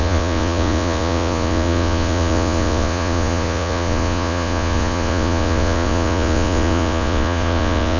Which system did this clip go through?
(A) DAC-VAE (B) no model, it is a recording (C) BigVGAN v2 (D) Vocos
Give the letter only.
D